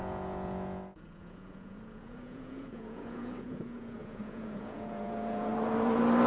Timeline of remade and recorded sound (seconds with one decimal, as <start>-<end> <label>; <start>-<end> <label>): 0.0-5.5 remade; 5.5-6.3 recorded